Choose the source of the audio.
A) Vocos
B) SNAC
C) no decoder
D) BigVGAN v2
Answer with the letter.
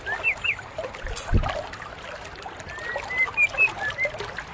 C